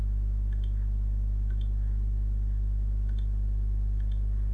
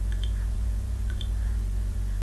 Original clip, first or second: first